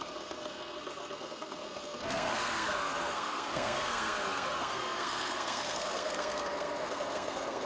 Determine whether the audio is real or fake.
fake